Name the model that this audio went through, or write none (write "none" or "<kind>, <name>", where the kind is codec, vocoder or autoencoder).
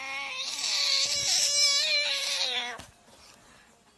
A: none